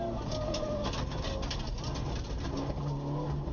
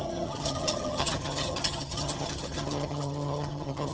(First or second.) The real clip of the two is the first